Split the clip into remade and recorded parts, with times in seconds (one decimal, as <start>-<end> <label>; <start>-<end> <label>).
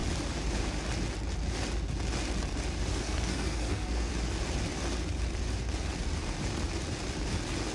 0.0-2.9 recorded; 2.9-4.1 remade; 4.1-7.7 recorded